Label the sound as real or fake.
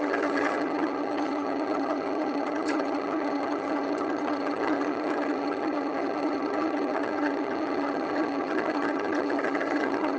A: fake